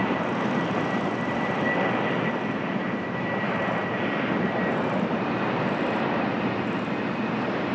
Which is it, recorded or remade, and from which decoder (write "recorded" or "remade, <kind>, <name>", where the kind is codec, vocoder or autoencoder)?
remade, vocoder, BigVGAN v2